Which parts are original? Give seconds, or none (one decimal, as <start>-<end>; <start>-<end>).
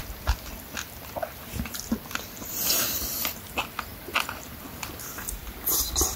0.0-6.2